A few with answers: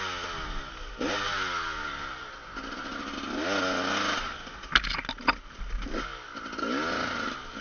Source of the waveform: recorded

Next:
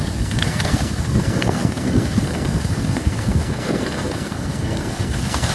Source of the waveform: remade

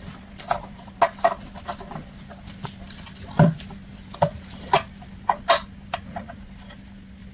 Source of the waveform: recorded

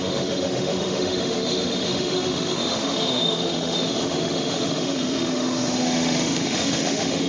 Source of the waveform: remade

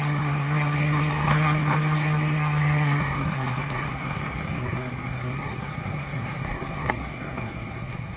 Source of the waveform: remade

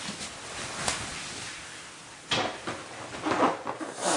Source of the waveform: recorded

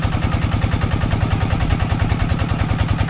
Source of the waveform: recorded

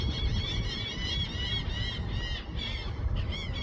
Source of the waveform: recorded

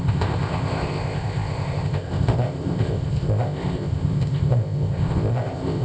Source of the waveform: remade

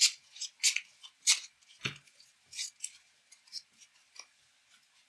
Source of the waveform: recorded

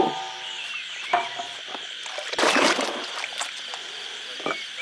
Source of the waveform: remade